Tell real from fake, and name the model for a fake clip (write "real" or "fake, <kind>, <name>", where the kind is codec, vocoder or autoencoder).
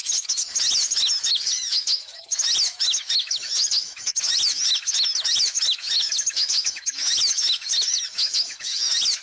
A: fake, autoencoder, DAC-VAE